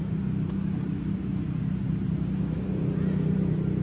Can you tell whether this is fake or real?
real